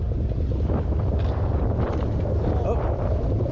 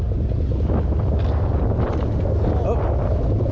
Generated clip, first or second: first